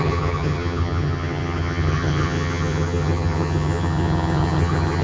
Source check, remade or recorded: remade